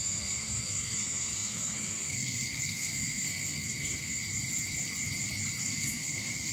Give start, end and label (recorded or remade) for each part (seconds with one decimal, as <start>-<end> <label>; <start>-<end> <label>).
0.0-4.2 remade; 4.2-5.6 recorded; 5.6-6.5 remade